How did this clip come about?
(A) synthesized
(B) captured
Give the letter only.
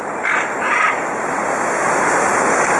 B